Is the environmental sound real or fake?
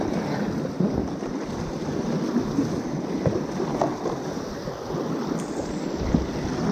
real